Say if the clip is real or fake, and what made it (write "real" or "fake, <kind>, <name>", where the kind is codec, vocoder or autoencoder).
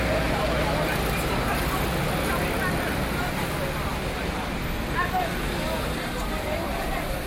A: real